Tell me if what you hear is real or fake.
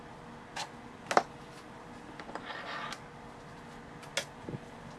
real